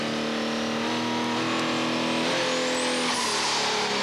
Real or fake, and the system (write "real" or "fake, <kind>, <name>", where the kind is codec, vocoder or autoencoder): real